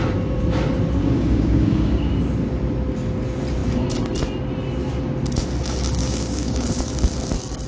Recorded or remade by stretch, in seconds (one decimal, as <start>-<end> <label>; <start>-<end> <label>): 0.0-1.0 recorded; 1.0-2.1 remade; 2.1-6.0 recorded; 6.0-6.8 remade; 6.8-7.7 recorded

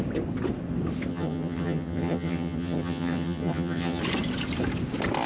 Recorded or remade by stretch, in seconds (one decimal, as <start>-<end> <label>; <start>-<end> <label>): 0.0-1.1 recorded; 1.1-4.0 remade; 4.0-5.3 recorded

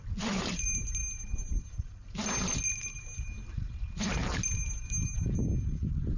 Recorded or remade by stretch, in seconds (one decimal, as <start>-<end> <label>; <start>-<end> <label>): 0.0-6.2 recorded

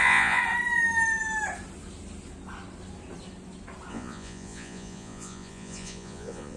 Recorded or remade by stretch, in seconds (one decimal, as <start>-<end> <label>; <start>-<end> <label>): 0.0-0.4 remade; 0.4-3.9 recorded; 3.9-6.6 remade

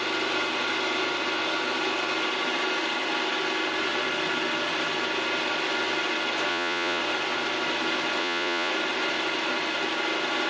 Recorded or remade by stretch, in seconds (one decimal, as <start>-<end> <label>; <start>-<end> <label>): 0.0-6.5 recorded; 6.5-7.0 remade; 7.0-8.2 recorded; 8.2-8.7 remade; 8.7-10.5 recorded

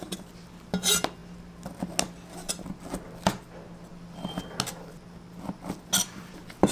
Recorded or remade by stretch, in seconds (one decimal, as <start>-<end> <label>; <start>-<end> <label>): 0.0-6.7 recorded

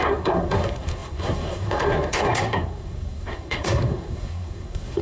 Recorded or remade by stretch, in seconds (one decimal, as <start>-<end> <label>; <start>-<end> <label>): 0.0-5.0 remade